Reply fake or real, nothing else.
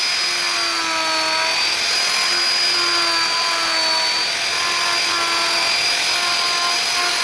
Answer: real